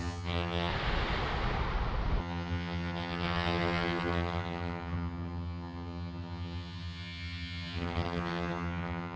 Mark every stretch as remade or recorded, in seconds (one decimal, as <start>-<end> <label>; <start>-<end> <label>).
0.0-0.7 remade; 0.7-2.2 recorded; 2.2-9.2 remade